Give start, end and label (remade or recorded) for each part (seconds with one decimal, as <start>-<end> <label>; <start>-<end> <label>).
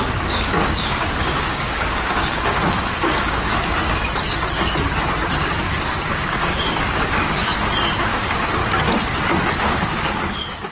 0.0-4.0 remade; 4.0-5.3 recorded; 5.3-7.5 remade; 7.5-8.0 recorded; 8.0-8.6 remade; 8.6-9.6 recorded; 9.6-10.7 remade